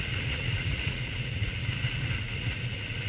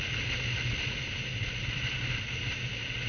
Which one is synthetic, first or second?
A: first